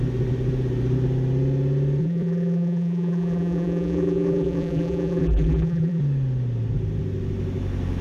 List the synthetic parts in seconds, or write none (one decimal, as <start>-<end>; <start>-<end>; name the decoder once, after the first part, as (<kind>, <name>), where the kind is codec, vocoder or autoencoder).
2.0-6.0 (vocoder, BigVGAN v2)